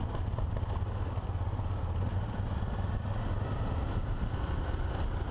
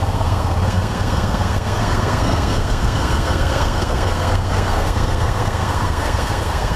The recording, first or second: first